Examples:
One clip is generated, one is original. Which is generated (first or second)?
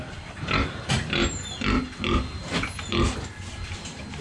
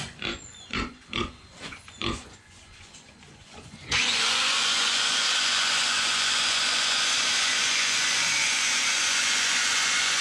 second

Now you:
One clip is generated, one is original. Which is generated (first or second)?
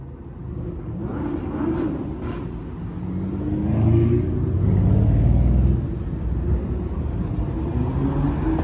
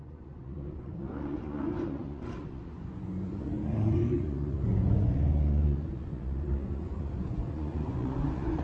second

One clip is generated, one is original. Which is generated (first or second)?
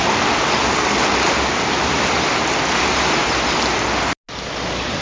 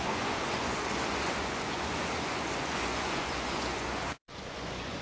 second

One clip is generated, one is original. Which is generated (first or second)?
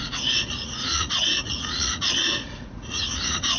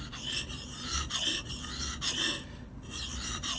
first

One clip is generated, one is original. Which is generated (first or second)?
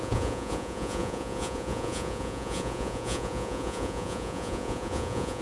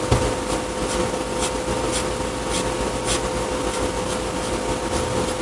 first